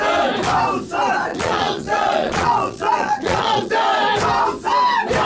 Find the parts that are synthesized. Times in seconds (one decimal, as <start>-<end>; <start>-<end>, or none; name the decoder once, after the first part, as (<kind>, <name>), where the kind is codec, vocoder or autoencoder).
1.3-3.7 (vocoder, Vocos)